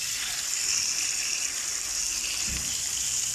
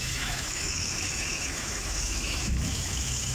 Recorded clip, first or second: first